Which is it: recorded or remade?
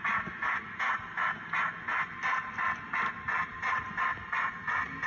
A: recorded